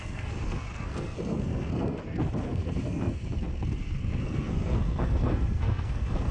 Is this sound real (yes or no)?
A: no